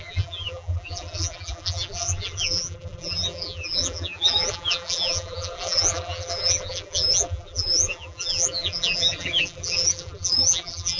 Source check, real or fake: fake